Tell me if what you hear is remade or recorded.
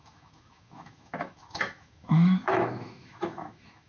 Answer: remade